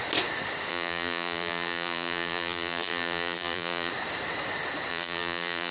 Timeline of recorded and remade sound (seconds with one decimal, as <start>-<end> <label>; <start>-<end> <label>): 0.0-0.7 recorded; 0.7-3.9 remade; 3.9-4.9 recorded; 4.9-5.7 remade